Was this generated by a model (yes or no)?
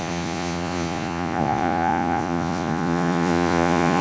yes